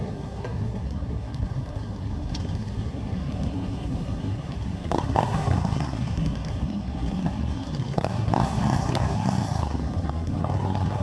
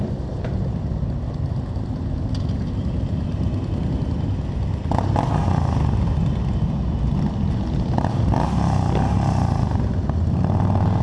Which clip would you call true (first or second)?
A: second